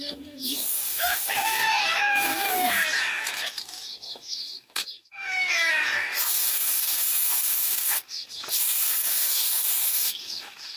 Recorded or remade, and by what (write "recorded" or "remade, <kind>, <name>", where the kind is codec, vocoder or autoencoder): remade, codec, DAC